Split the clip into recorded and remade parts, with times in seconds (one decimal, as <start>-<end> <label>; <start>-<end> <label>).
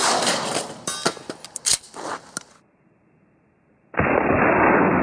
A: 0.0-5.0 recorded